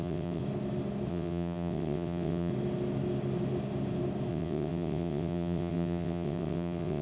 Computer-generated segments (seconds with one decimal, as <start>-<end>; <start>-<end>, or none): 0.0-0.4; 1.1-2.5; 4.3-7.0